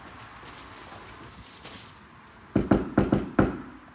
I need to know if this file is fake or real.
real